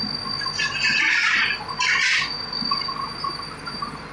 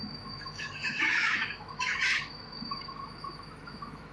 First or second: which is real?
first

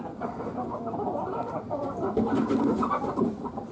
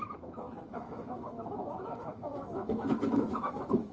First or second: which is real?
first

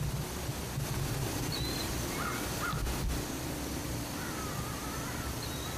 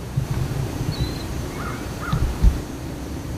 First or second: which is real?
first